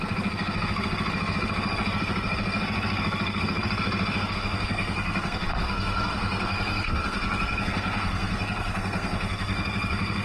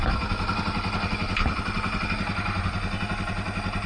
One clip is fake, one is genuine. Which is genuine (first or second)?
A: second